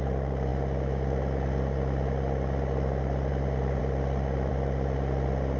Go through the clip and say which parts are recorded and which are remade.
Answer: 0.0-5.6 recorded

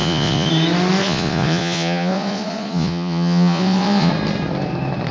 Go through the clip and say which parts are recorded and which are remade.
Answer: 0.0-0.5 remade; 0.5-1.0 recorded; 1.0-4.1 remade; 4.1-5.1 recorded

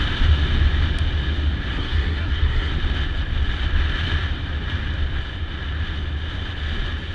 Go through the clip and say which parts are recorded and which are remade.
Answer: 0.0-1.7 recorded; 1.7-2.7 remade; 2.7-7.1 recorded

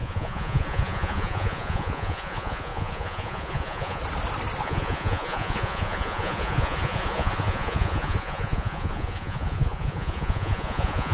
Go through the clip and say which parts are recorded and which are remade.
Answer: 0.0-4.0 remade; 4.0-4.6 recorded; 4.6-11.1 remade

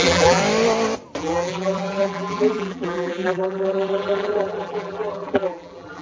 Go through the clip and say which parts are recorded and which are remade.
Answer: 0.0-0.4 remade; 0.4-1.2 recorded; 1.2-6.0 remade

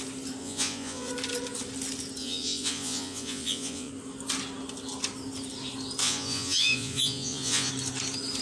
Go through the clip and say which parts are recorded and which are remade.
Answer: 0.0-0.4 recorded; 0.4-1.1 remade; 1.1-2.2 recorded; 2.2-3.9 remade; 3.9-6.0 recorded; 6.0-7.7 remade; 7.7-8.4 recorded

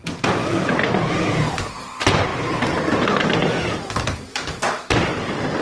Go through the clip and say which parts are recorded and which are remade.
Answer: 0.0-0.4 recorded; 0.4-1.3 remade; 1.3-5.6 recorded